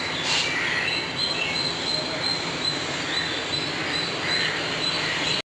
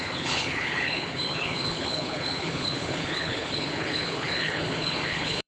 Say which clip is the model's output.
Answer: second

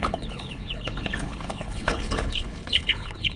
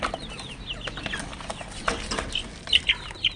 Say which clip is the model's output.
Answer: first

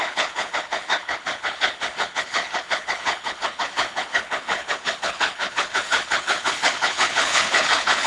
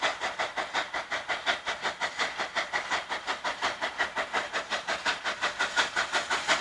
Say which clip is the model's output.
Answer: first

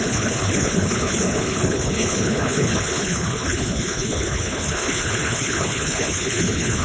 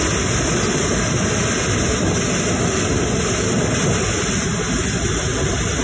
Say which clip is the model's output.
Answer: first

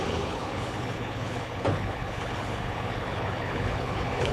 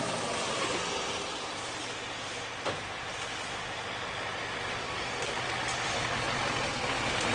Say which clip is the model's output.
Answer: first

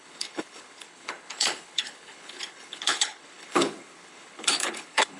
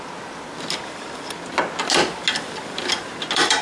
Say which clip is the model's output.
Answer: first